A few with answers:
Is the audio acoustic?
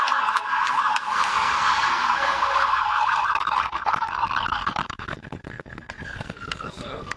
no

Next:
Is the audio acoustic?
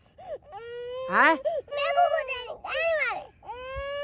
yes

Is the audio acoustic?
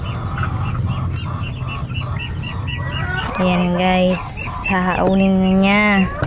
yes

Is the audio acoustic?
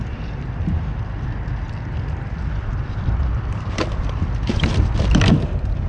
no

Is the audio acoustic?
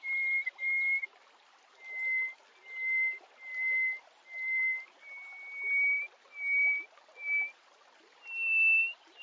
yes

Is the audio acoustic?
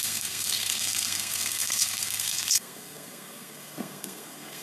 no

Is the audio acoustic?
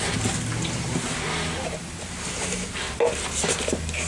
yes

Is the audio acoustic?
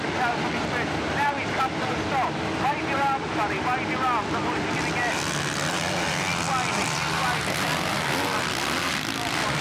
yes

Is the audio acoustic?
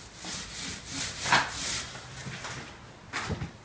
yes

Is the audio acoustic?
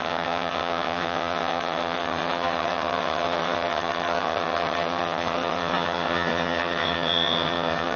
no